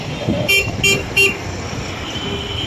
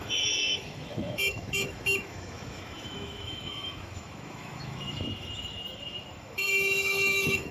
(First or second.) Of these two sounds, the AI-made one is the second